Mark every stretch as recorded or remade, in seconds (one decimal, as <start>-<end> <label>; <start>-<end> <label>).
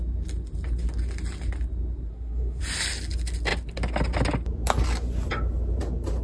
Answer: 0.0-2.1 recorded; 2.1-2.6 remade; 2.6-6.2 recorded